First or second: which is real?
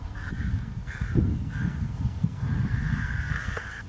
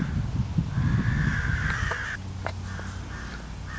second